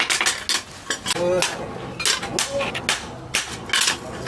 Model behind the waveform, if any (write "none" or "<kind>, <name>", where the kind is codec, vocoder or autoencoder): none